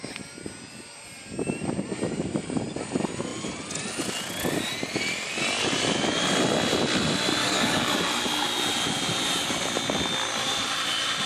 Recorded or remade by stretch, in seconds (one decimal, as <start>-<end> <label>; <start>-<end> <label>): 0.0-7.4 recorded; 7.4-8.0 remade; 8.0-11.3 recorded